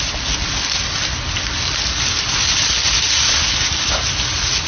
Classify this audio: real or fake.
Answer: real